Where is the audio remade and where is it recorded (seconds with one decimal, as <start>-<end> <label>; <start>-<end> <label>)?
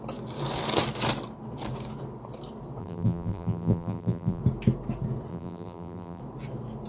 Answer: 0.0-2.8 recorded; 2.8-4.4 remade; 4.4-5.3 recorded; 5.3-6.2 remade; 6.2-6.9 recorded